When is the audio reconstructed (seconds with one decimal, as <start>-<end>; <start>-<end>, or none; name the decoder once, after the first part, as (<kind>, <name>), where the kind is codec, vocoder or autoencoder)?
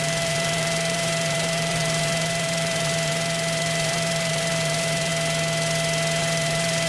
0.0-5.1 (vocoder, BigVGAN v2); 6.2-6.9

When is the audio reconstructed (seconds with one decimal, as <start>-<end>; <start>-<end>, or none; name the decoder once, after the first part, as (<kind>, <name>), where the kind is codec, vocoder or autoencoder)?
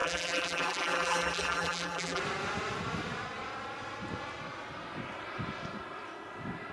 0.0-2.2 (vocoder, BigVGAN v2)